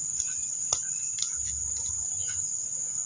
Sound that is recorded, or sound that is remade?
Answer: recorded